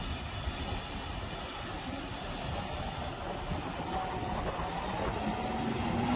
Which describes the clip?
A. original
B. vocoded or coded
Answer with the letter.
A